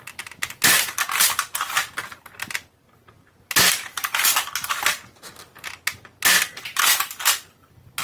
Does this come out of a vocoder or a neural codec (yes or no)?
no